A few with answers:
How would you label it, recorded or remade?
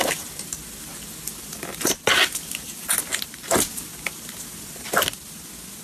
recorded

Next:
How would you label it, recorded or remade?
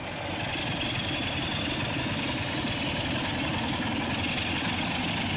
recorded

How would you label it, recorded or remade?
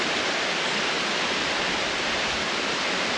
remade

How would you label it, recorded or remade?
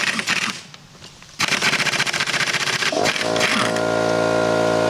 recorded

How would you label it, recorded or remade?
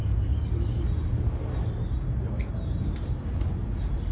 recorded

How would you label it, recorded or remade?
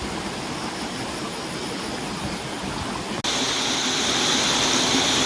recorded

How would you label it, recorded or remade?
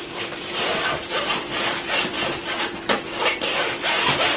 remade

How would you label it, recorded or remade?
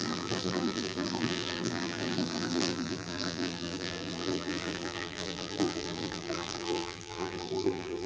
remade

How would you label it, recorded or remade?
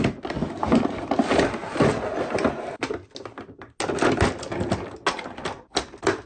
recorded